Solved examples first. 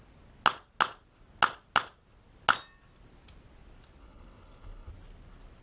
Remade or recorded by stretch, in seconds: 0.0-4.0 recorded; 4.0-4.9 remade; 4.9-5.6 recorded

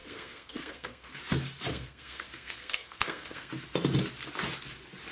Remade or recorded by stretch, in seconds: 0.0-1.2 remade; 1.2-1.7 recorded; 1.7-3.5 remade; 3.5-5.1 recorded

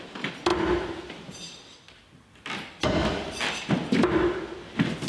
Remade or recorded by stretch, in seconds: 0.0-0.5 recorded; 0.5-3.6 remade; 3.6-5.1 recorded

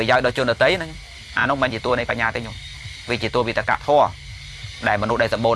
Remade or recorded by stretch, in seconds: 0.0-1.4 recorded; 1.4-2.1 remade; 2.1-5.6 recorded

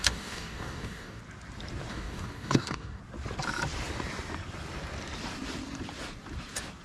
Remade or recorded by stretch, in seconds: 0.0-1.2 remade; 1.2-1.9 recorded; 1.9-3.0 remade; 3.0-6.8 recorded

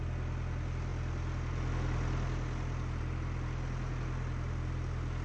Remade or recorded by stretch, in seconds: 0.0-5.2 recorded

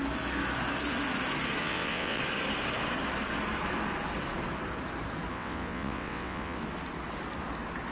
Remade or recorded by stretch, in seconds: 0.0-1.6 recorded; 1.6-2.2 remade; 2.2-5.3 recorded; 5.3-6.6 remade; 6.6-7.9 recorded

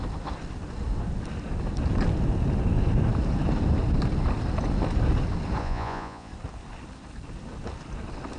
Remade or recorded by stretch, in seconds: 0.0-5.6 recorded; 5.6-6.3 remade; 6.3-8.4 recorded